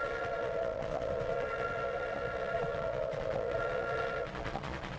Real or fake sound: fake